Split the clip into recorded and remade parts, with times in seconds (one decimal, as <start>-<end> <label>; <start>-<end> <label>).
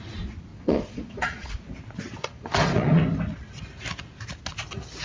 0.0-0.5 recorded; 0.5-1.5 remade; 1.5-2.2 recorded; 2.2-3.0 remade; 3.0-5.0 recorded